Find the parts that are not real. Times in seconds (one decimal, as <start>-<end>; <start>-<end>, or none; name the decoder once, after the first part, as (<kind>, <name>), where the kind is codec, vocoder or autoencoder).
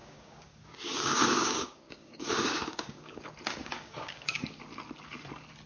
0.0-3.2 (codec, DAC); 3.6-4.6